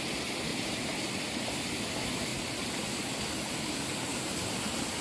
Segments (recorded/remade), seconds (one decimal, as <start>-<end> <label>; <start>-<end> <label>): 0.0-0.5 recorded; 0.5-1.1 remade; 1.1-5.0 recorded

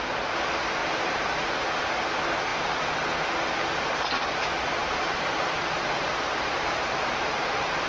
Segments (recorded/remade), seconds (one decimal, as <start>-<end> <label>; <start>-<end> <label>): 0.0-0.8 recorded; 0.8-1.3 remade; 1.3-4.8 recorded; 4.8-7.9 remade

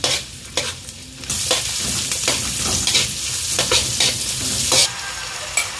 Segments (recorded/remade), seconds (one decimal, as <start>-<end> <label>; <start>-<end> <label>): 0.0-5.8 recorded

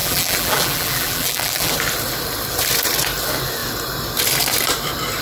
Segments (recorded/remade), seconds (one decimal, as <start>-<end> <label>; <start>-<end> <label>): 0.0-1.7 remade; 1.7-5.2 recorded